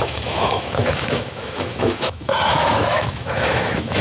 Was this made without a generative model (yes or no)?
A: no